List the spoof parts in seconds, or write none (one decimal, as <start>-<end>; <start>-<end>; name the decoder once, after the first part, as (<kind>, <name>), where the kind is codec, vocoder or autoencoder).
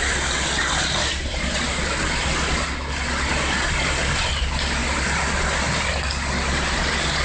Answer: none